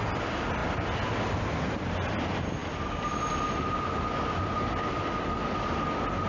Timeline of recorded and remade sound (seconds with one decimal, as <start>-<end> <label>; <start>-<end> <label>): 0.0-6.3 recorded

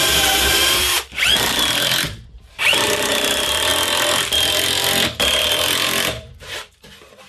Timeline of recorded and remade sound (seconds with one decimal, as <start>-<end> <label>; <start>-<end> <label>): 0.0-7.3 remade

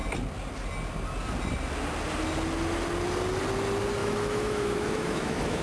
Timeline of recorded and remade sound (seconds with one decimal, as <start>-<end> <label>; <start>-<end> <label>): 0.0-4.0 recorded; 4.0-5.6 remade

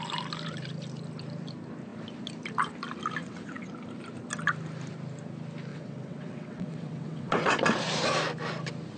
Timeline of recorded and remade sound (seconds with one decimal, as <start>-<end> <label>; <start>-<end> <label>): 0.0-3.2 recorded; 3.2-3.7 remade; 3.7-5.7 recorded; 5.7-7.6 remade; 7.6-9.0 recorded